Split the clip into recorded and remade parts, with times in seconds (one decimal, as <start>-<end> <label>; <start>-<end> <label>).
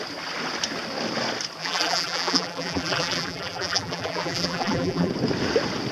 0.0-1.6 recorded; 1.6-5.1 remade; 5.1-5.9 recorded